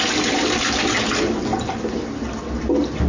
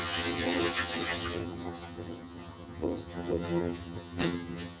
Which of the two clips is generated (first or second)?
second